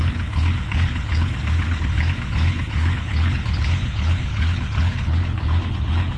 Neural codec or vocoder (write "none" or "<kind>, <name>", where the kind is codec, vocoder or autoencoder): codec, HILCodec